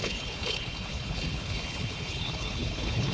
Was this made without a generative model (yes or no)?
no